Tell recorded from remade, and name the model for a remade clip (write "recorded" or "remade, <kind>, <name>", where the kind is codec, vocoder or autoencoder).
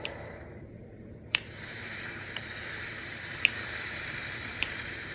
remade, vocoder, BigVGAN v2